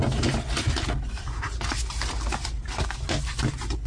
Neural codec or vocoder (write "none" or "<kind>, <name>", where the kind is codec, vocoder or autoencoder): none